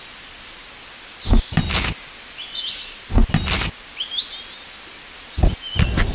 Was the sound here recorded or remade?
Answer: recorded